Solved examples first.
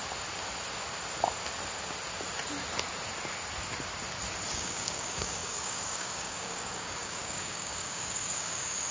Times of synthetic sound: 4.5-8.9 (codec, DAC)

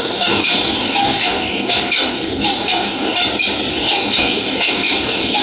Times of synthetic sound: 0.0-3.2 (codec, DAC); 3.7-5.4

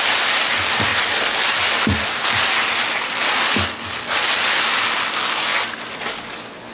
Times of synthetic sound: none